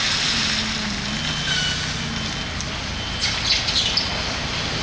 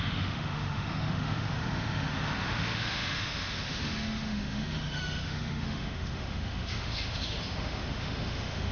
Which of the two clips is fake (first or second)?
second